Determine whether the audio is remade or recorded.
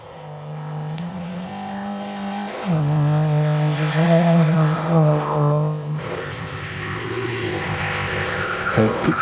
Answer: remade